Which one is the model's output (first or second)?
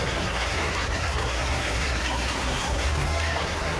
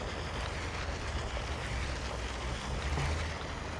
first